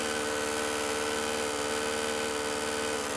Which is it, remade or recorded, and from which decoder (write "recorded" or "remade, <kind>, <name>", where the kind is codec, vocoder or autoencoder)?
recorded